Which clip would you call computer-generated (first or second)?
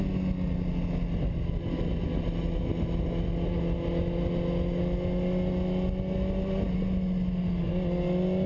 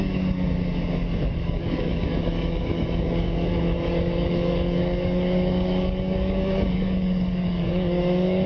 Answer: second